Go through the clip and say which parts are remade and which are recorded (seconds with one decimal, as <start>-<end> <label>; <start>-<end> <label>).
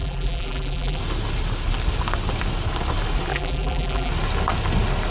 0.0-1.0 remade; 1.0-3.3 recorded; 3.3-4.1 remade; 4.1-5.1 recorded